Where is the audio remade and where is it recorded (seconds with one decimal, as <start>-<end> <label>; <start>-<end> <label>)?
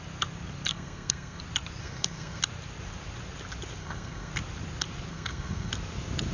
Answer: 0.0-0.7 recorded; 0.7-1.4 remade; 1.4-1.8 recorded; 1.8-2.4 remade; 2.4-3.8 recorded; 3.8-4.3 remade; 4.3-5.1 recorded; 5.1-5.7 remade; 5.7-6.3 recorded